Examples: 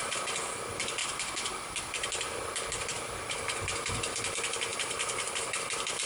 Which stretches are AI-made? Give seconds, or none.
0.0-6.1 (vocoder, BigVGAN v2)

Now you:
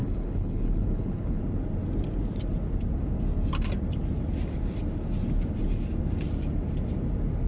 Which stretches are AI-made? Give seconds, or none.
0.0-1.4 (codec, HILCodec)

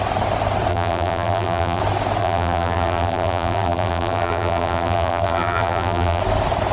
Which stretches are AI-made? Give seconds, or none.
0.7-1.8 (vocoder, BigVGAN v2); 2.2-6.2

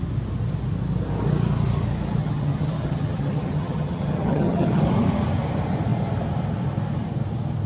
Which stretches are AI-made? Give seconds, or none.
2.2-4.8 (vocoder, HiFi-GAN)